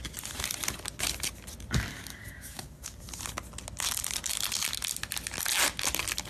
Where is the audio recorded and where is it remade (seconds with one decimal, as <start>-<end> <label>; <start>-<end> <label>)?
0.0-1.9 recorded; 1.9-3.0 remade; 3.0-6.3 recorded